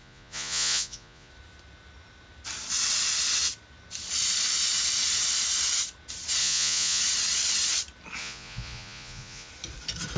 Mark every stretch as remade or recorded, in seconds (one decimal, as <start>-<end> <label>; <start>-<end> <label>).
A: 0.0-1.3 remade; 1.3-6.4 recorded; 6.4-7.0 remade; 7.0-8.2 recorded; 8.2-9.5 remade; 9.5-10.2 recorded